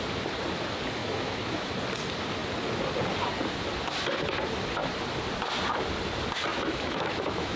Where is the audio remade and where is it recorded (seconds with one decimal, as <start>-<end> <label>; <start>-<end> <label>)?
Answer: 0.0-1.0 recorded; 1.0-1.7 remade; 1.7-6.5 recorded; 6.5-7.6 remade